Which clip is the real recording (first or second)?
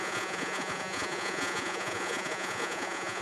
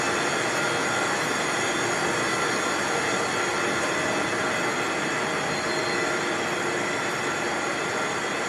second